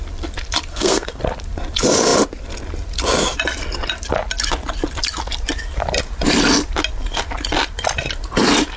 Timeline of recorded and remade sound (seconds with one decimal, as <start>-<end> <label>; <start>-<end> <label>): 0.0-0.7 recorded; 0.7-1.2 remade; 1.2-8.8 recorded